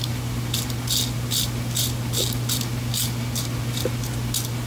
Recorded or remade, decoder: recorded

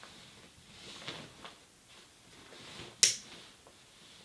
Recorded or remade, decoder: recorded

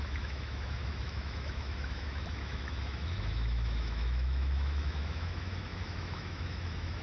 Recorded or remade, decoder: remade, autoencoder, DAC-VAE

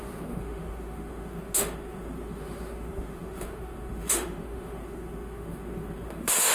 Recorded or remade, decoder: remade, autoencoder, DAC-VAE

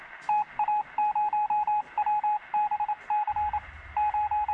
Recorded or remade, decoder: recorded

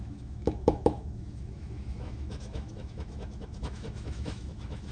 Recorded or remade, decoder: remade, autoencoder, DAC-VAE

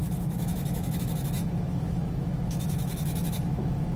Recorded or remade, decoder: remade, autoencoder, DAC-VAE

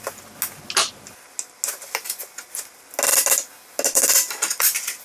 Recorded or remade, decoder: recorded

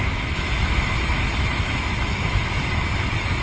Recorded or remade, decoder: remade, autoencoder, DAC-VAE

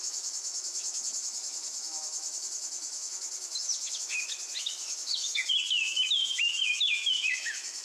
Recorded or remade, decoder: remade, autoencoder, DAC-VAE